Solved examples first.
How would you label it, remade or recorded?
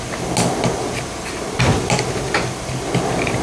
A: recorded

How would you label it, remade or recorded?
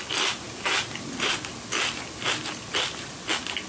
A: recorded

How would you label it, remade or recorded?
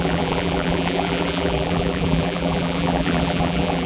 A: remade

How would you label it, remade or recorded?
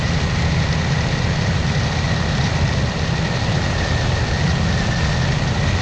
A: recorded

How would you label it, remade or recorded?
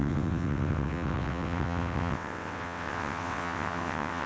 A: remade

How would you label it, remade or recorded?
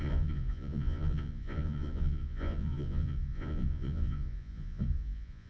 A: remade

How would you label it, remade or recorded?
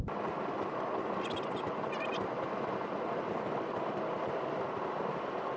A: recorded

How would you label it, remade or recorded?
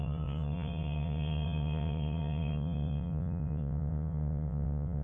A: remade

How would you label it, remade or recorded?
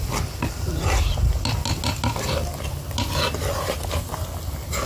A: recorded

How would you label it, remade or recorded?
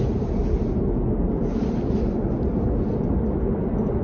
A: recorded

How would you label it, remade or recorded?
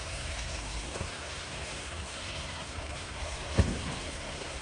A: remade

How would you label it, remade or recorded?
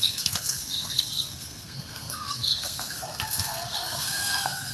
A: remade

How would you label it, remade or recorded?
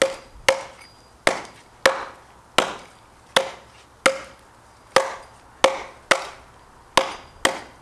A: recorded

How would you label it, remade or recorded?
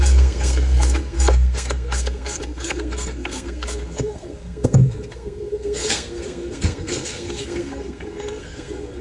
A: remade